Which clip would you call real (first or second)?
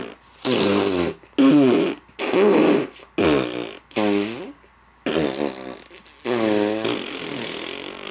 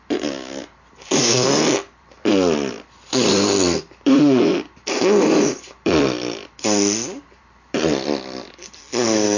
first